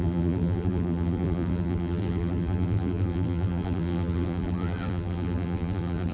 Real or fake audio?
fake